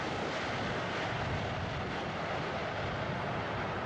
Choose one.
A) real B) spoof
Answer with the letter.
A